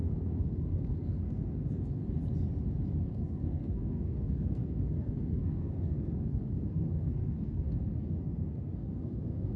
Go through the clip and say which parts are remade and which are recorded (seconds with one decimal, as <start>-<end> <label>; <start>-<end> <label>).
0.0-2.0 remade; 2.0-3.0 recorded; 3.0-9.6 remade